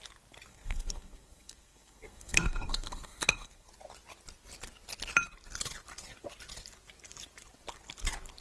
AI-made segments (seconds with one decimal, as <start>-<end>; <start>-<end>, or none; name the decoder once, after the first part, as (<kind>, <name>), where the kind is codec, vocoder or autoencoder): 0.5-3.7 (codec, SNAC)